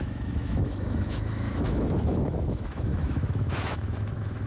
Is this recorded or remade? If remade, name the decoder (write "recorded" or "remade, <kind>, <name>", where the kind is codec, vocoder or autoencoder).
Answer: remade, autoencoder, DAC-VAE